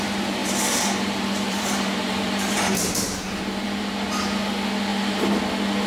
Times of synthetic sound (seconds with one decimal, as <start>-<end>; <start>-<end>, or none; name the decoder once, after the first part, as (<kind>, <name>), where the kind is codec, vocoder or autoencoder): 0.4-3.9 (vocoder, BigVGAN v2); 4.9-5.4